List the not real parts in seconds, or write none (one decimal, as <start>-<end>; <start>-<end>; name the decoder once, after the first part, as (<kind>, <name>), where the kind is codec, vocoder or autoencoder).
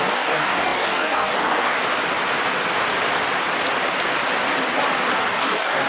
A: 0.0-1.8 (codec, DAC); 5.3-5.9